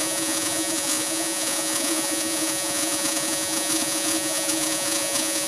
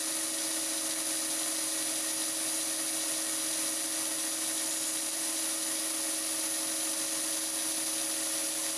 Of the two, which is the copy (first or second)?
first